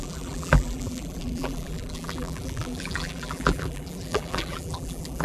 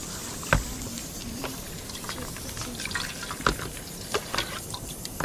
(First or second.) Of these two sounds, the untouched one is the second